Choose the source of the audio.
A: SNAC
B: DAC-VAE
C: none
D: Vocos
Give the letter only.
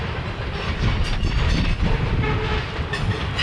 C